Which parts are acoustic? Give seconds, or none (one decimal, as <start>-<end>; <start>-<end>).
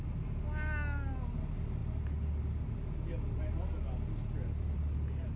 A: 0.0-5.4